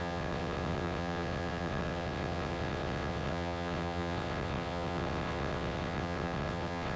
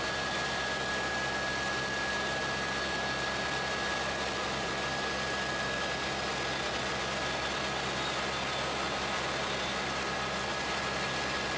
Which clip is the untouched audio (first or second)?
second